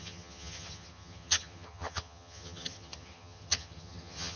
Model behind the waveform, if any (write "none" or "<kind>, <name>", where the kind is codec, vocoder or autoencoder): vocoder, HiFi-GAN